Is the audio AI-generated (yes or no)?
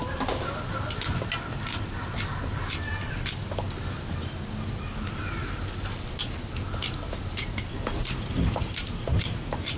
no